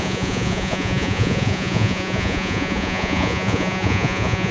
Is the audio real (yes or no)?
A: no